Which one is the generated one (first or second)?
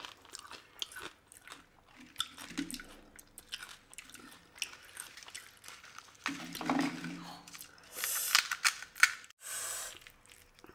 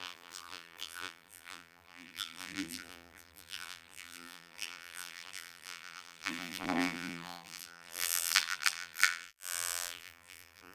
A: second